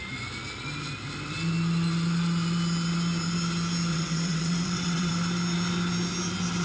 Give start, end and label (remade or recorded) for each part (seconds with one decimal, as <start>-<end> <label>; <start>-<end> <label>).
0.0-3.9 recorded; 3.9-5.1 remade; 5.1-6.6 recorded